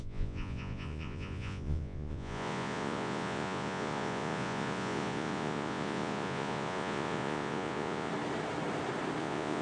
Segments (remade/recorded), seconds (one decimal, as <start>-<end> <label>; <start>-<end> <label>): 0.0-8.1 remade; 8.1-9.2 recorded; 9.2-9.6 remade